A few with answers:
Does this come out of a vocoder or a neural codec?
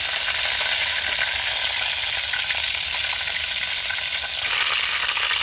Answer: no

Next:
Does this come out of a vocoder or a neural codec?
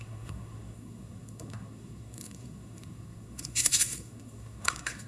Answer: yes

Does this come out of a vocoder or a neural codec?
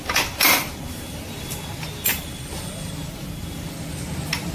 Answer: no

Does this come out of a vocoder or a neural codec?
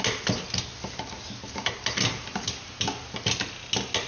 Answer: no